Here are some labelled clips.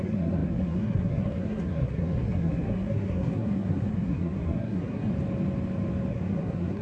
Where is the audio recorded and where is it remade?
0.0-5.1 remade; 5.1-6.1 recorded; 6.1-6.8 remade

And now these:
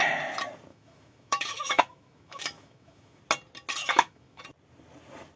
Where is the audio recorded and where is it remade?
0.0-0.7 recorded; 0.7-3.2 remade; 3.2-3.8 recorded; 3.8-4.4 remade; 4.4-5.4 recorded